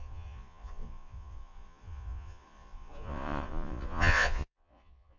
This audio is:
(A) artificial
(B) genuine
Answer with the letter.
A